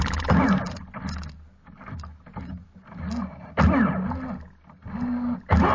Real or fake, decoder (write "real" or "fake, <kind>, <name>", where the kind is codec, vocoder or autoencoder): real